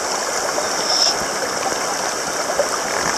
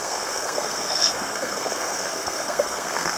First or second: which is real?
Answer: first